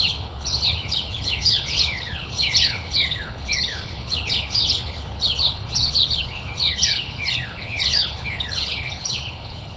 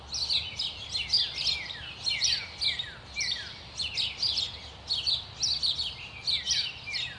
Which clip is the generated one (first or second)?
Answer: first